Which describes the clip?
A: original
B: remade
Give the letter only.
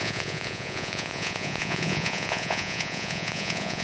B